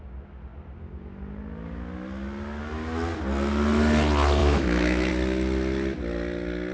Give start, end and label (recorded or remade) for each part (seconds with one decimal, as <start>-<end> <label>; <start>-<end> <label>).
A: 0.0-4.4 recorded; 4.4-5.1 remade; 5.1-6.7 recorded